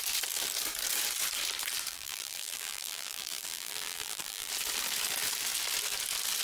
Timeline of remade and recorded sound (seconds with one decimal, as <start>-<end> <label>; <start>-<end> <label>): 0.0-1.9 recorded; 1.9-4.5 remade; 4.5-6.4 recorded